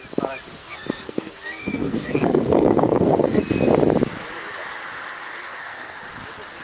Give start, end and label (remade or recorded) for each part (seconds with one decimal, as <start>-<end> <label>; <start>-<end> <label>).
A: 0.0-0.6 recorded; 0.6-3.4 remade; 3.4-5.5 recorded; 5.5-6.0 remade; 6.0-6.6 recorded